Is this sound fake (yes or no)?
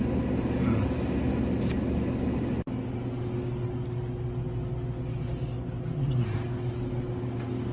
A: no